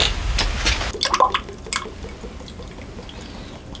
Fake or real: real